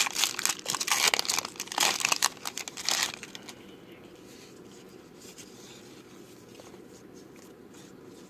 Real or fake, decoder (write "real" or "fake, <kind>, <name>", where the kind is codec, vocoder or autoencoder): real